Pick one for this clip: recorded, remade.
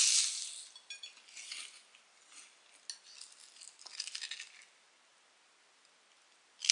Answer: recorded